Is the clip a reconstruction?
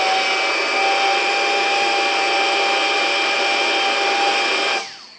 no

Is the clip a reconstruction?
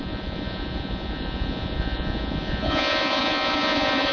yes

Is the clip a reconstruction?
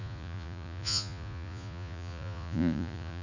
yes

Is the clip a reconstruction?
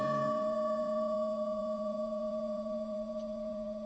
yes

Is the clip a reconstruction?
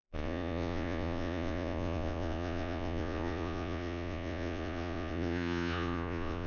yes